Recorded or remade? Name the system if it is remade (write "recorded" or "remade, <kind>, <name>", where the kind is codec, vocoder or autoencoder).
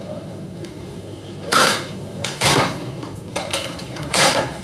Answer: remade, codec, SNAC